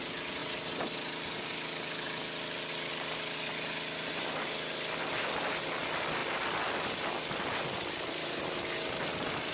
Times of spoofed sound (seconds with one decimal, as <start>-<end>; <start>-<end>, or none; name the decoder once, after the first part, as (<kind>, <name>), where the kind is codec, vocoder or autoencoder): none